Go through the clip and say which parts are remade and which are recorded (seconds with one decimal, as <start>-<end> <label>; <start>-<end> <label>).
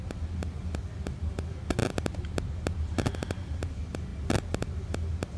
0.0-5.4 recorded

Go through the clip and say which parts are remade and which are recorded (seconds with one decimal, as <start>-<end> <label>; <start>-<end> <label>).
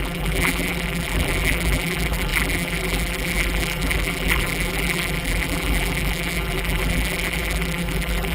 0.0-8.3 remade